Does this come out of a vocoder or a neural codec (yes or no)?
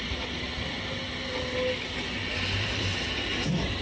no